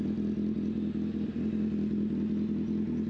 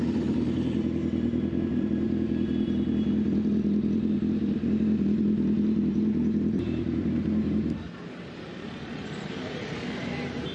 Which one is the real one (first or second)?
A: first